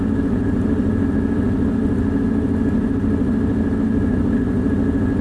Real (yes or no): yes